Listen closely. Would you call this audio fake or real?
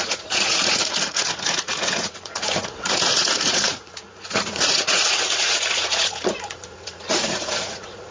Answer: fake